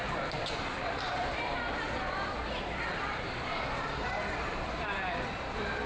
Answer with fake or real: fake